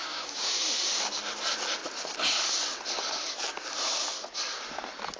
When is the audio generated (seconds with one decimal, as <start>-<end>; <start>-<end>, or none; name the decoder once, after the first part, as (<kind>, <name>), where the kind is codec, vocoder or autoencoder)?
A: 0.0-0.6 (codec, DAC)